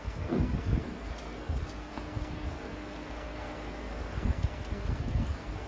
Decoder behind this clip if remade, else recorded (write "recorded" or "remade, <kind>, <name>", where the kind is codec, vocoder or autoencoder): remade, codec, SNAC